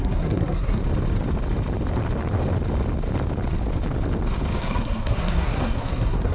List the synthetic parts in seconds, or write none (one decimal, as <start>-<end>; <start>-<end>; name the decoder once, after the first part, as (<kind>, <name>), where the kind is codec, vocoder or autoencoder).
0.0-0.8 (codec, SNAC); 4.6-6.3